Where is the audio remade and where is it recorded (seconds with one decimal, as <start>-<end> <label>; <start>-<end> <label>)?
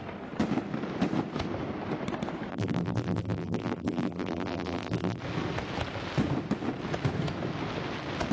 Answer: 0.0-2.5 recorded; 2.5-5.2 remade; 5.2-8.3 recorded